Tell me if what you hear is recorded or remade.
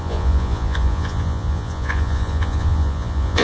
remade